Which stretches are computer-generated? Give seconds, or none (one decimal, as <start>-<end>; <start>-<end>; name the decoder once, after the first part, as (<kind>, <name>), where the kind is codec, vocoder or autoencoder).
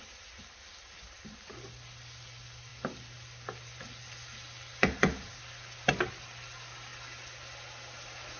none